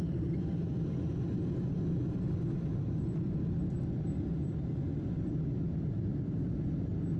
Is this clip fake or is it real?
real